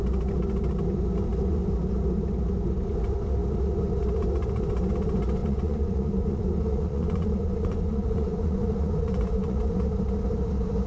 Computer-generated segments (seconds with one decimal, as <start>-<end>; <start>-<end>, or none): 5.4-9.8